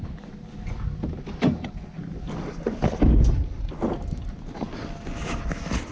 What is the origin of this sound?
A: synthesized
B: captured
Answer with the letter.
B